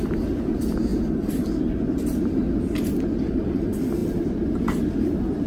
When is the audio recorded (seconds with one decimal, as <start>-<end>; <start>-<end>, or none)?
0.0-5.5